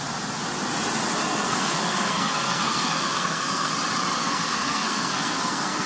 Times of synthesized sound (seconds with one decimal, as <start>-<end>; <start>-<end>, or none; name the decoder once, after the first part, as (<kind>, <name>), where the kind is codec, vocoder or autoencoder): 1.2-3.7 (codec, SNAC); 4.2-5.9